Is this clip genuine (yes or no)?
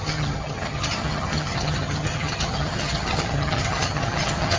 no